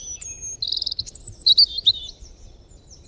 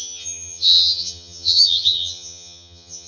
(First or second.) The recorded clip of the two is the first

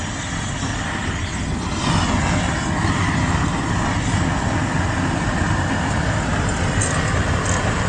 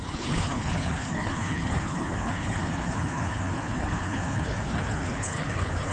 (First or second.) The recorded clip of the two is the first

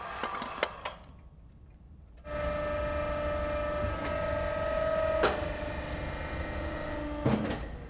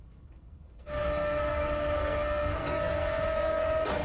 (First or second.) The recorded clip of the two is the first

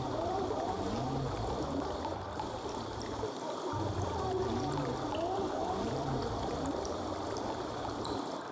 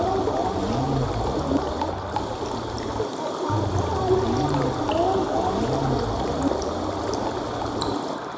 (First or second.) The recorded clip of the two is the second